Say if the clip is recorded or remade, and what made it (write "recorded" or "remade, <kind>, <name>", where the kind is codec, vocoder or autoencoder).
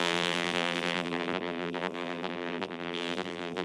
remade, vocoder, BigVGAN v2